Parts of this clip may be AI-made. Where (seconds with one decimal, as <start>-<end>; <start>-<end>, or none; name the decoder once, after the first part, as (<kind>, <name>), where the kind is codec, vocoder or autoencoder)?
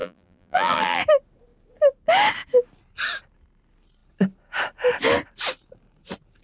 0.0-1.0 (vocoder, BigVGAN v2)